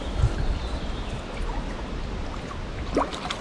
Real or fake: real